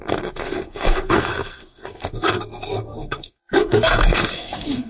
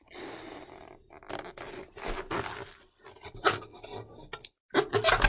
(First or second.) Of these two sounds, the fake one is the first